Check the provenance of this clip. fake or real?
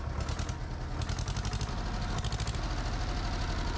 real